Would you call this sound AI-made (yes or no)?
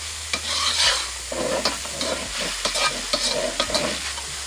no